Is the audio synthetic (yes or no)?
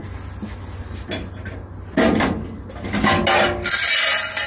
no